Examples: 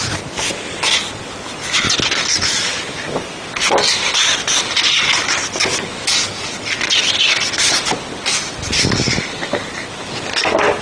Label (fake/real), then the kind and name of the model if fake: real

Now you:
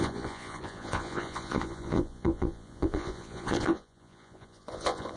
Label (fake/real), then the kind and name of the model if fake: fake, vocoder, Vocos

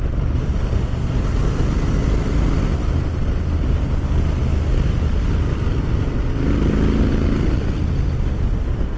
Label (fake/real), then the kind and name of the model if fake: real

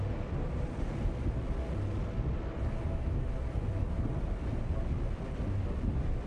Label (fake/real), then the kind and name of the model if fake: real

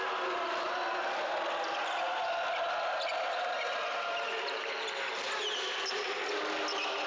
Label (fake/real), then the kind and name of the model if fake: real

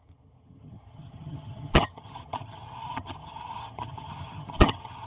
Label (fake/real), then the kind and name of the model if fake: fake, vocoder, HiFi-GAN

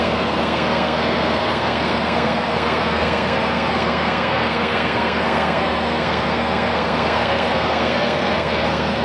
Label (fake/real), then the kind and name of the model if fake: fake, codec, SNAC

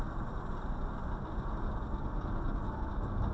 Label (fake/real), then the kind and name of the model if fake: real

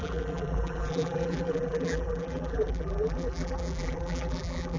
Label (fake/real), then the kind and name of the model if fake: fake, vocoder, BigVGAN v2